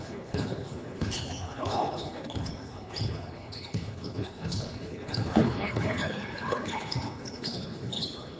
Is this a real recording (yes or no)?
no